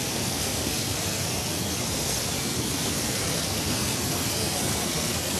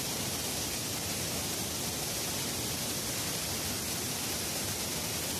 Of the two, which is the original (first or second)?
second